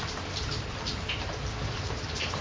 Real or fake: fake